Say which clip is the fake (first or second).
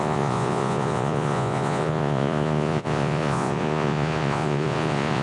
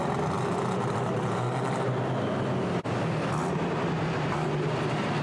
first